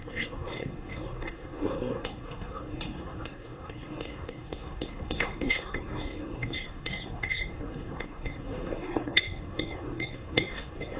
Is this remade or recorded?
remade